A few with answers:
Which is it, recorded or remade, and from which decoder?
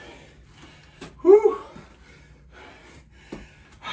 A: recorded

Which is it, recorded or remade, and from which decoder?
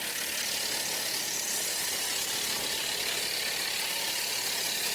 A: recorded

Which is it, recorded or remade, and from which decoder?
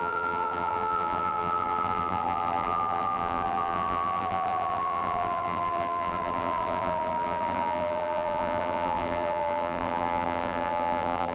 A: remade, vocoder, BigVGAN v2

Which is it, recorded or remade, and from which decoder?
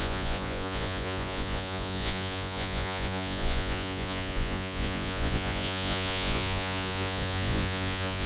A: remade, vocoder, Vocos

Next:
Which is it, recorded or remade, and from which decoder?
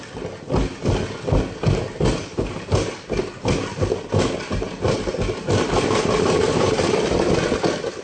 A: recorded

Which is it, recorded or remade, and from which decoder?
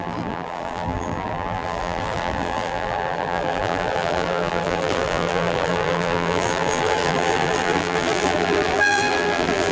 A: remade, vocoder, BigVGAN v2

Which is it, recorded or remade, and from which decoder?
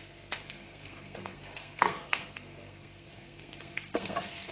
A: remade, codec, SNAC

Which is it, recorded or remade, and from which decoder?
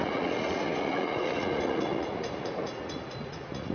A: remade, vocoder, Vocos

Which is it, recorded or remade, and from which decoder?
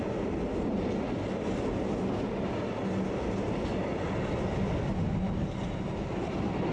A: recorded